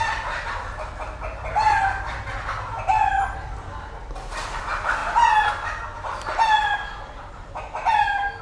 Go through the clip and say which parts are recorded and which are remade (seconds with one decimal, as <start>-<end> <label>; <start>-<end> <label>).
0.0-8.4 recorded